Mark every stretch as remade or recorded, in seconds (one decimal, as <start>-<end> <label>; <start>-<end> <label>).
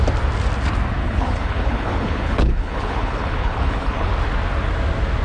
0.0-1.0 recorded; 1.0-4.1 remade; 4.1-5.2 recorded